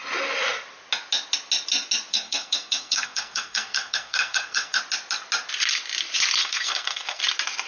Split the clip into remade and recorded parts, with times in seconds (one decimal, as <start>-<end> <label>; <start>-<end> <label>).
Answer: 0.0-2.1 recorded; 2.1-4.8 remade; 4.8-6.4 recorded; 6.4-7.2 remade; 7.2-7.7 recorded